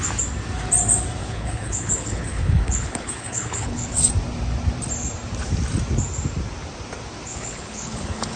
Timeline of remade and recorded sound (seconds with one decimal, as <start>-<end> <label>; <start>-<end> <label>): 0.0-1.2 recorded; 1.2-4.1 remade; 4.1-7.3 recorded; 7.3-8.4 remade